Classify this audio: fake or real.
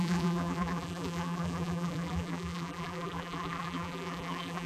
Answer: fake